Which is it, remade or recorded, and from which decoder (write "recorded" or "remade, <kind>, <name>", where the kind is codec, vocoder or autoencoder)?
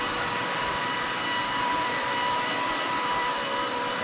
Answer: remade, vocoder, BigVGAN v2